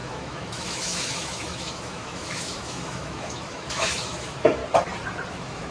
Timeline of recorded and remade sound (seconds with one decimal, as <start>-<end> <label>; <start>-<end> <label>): 0.0-4.6 remade; 4.6-5.3 recorded; 5.3-5.7 remade